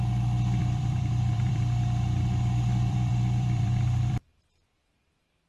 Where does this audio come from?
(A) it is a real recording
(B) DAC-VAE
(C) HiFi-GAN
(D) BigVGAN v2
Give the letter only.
D